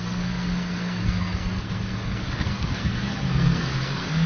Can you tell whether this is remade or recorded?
remade